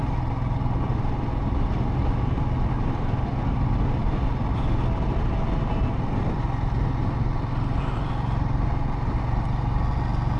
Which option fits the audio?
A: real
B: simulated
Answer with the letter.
A